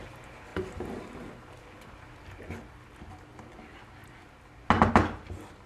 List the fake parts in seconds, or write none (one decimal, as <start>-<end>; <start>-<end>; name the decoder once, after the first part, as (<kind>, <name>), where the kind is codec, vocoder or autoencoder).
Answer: none